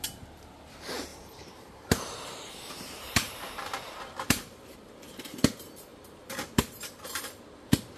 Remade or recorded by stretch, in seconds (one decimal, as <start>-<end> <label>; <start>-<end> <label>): 0.0-1.1 recorded; 1.1-4.9 remade; 4.9-5.9 recorded; 5.9-7.2 remade; 7.2-8.0 recorded